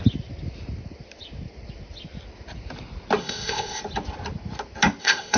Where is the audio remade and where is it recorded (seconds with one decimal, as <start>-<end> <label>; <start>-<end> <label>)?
0.0-3.2 recorded; 3.2-3.8 remade; 3.8-5.0 recorded; 5.0-5.4 remade